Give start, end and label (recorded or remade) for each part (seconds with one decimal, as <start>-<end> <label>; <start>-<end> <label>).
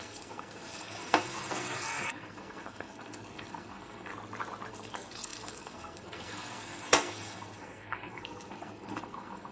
0.0-4.1 remade; 4.1-4.7 recorded; 4.7-9.5 remade